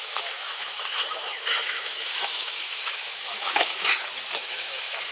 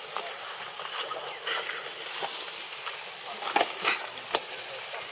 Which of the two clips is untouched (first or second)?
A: second